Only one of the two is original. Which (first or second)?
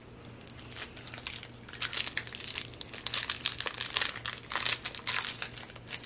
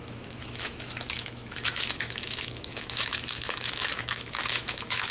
first